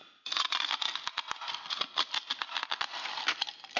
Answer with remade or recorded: recorded